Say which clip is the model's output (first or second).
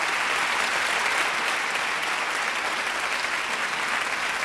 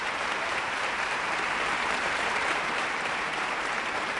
second